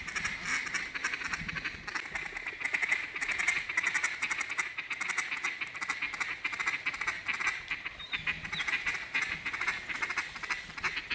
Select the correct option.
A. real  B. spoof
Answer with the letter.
A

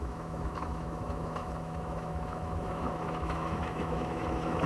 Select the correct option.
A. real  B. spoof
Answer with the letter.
B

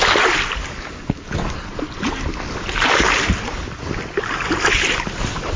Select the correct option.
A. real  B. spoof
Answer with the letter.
A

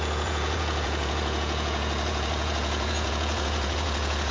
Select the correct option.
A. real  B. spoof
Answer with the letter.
B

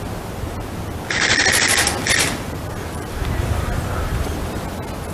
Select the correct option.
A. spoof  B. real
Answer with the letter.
B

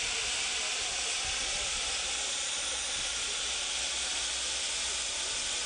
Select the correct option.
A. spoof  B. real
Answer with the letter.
B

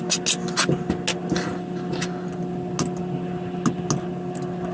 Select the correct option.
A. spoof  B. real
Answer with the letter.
B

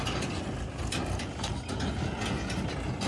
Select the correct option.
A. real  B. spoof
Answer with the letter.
A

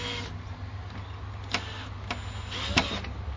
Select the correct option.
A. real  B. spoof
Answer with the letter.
A